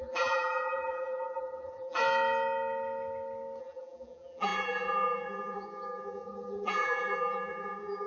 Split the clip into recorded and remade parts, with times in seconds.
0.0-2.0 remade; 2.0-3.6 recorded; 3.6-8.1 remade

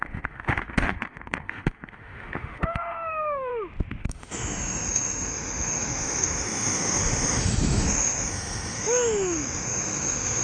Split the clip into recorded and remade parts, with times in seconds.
0.0-3.5 remade; 3.5-4.0 recorded; 4.0-10.4 remade

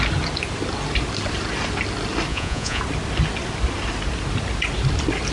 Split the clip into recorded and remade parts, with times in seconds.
0.0-2.3 recorded; 2.3-2.8 remade; 2.8-5.3 recorded

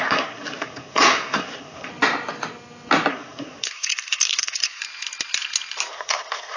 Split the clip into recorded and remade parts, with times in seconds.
0.0-1.9 remade; 1.9-3.1 recorded; 3.1-4.8 remade; 4.8-5.9 recorded; 5.9-6.6 remade

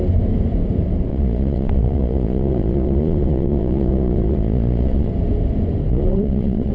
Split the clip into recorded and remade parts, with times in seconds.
0.0-1.1 recorded; 1.1-5.1 remade; 5.1-5.9 recorded; 5.9-6.7 remade